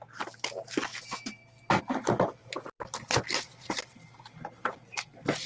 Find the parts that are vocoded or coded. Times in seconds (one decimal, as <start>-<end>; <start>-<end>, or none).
2.4-4.0